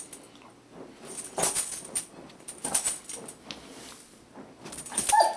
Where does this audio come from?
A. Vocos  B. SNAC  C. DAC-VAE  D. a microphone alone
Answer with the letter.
D